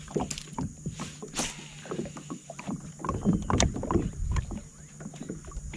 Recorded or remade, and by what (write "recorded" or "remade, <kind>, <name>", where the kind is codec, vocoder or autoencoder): recorded